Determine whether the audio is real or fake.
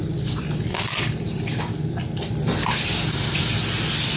fake